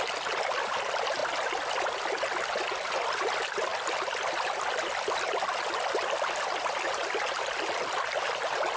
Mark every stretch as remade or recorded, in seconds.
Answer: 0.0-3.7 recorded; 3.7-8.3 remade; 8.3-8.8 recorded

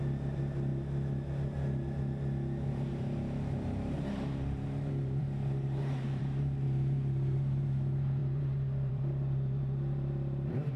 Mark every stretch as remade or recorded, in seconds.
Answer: 0.0-0.7 remade; 0.7-2.7 recorded; 2.7-10.8 remade